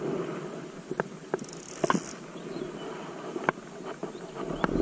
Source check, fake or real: real